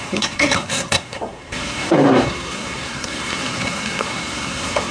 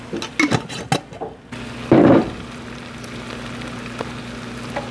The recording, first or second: second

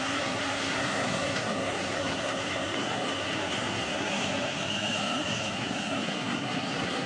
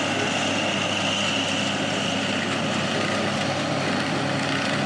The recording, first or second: second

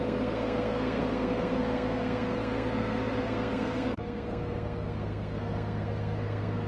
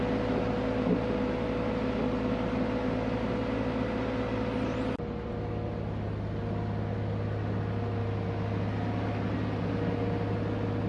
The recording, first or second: second